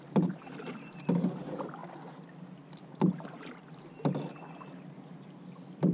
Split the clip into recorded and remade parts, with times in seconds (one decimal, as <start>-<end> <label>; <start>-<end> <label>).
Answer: 0.0-5.9 recorded